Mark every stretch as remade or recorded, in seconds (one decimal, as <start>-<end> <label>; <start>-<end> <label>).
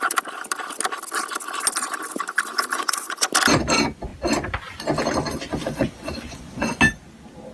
0.0-2.7 recorded; 2.7-3.3 remade; 3.3-5.5 recorded; 5.5-6.8 remade; 6.8-7.5 recorded